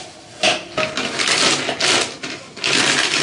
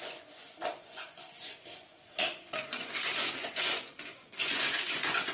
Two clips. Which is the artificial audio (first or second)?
second